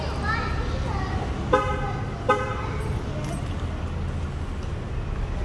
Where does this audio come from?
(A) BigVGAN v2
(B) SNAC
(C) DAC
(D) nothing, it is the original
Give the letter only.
D